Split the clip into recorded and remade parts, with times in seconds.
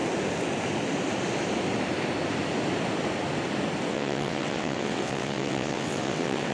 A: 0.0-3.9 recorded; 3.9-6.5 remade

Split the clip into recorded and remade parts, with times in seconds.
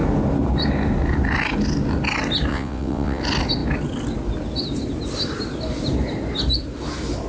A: 0.0-2.5 recorded; 2.5-3.2 remade; 3.2-7.3 recorded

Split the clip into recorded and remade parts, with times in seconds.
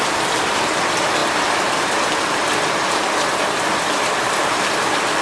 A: 0.0-5.2 recorded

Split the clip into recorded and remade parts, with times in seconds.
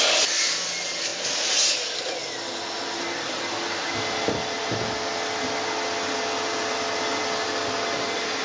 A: 0.0-8.4 recorded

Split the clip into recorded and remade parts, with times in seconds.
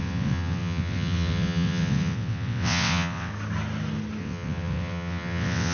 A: 0.0-3.3 remade; 3.3-4.2 recorded; 4.2-5.7 remade